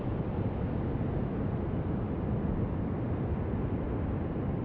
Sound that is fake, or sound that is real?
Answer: real